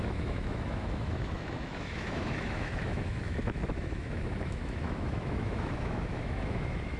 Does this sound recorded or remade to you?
remade